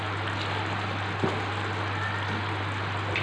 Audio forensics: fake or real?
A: real